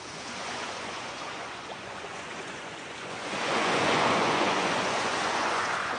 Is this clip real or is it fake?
fake